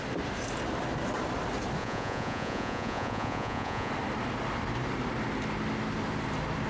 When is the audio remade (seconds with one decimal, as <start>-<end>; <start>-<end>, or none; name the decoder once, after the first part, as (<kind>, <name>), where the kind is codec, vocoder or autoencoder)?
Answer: 1.8-3.9 (vocoder, Vocos)